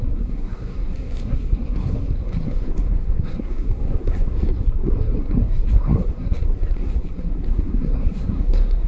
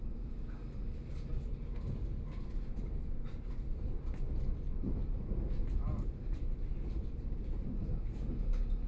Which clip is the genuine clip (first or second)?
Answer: second